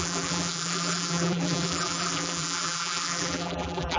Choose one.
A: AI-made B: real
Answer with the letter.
A